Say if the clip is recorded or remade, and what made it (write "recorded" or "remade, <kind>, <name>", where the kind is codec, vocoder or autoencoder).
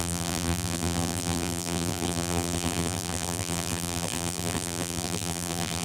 remade, vocoder, BigVGAN v2